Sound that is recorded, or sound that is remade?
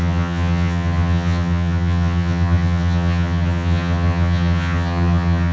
remade